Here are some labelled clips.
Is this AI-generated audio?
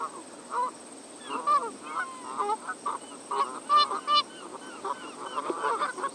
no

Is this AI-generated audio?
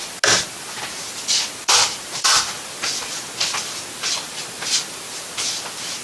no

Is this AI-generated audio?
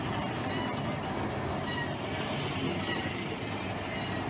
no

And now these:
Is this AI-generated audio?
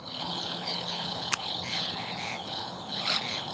yes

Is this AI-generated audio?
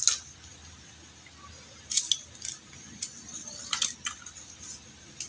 no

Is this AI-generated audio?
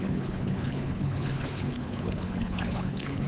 yes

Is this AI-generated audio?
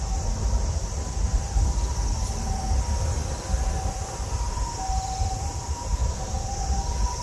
no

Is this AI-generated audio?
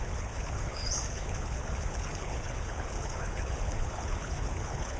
yes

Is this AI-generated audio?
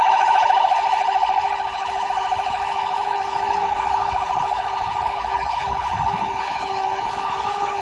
yes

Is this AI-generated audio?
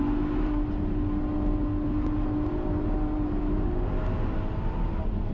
no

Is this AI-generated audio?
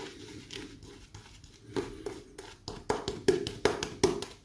no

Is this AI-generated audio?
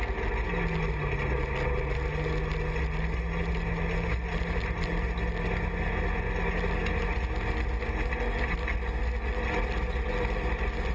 no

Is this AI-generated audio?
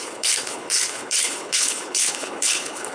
yes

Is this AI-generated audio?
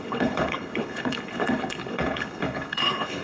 yes